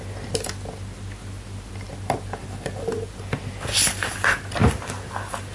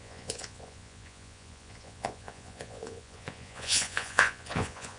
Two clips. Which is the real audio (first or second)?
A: first